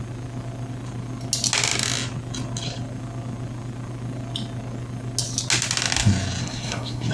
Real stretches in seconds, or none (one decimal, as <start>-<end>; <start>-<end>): 0.0-6.4